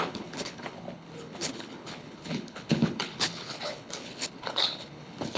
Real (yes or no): no